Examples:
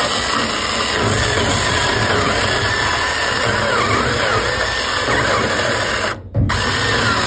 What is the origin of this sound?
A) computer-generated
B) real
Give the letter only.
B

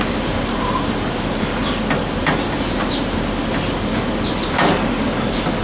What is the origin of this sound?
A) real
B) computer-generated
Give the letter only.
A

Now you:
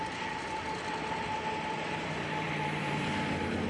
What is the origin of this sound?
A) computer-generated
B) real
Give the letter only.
A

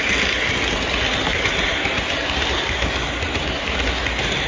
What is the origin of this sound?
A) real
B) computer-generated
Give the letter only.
A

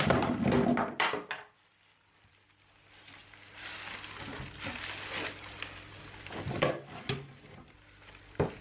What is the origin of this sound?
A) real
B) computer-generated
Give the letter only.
A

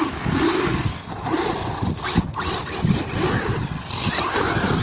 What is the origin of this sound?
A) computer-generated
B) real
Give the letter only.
B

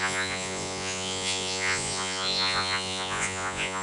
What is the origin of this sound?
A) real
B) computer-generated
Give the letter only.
B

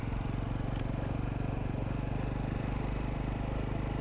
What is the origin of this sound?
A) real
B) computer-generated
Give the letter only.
A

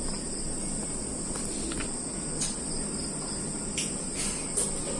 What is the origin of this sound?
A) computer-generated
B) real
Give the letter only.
B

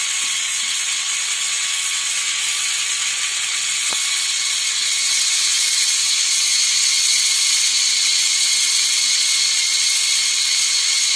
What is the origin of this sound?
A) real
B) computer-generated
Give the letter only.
B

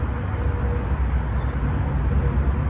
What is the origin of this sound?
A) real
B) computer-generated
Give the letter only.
A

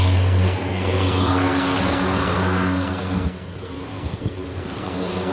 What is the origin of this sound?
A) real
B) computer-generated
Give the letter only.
B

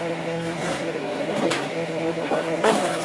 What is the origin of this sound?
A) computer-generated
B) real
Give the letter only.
A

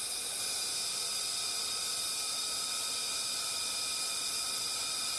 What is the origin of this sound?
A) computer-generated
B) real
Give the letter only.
B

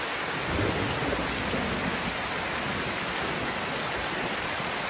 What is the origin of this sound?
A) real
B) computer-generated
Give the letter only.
A